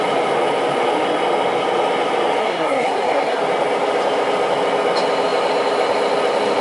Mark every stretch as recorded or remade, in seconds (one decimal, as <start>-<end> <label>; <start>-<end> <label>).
0.0-2.4 recorded; 2.4-3.4 remade; 3.4-6.6 recorded